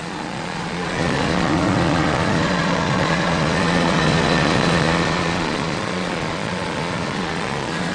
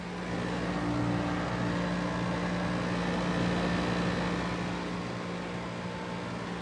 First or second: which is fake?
first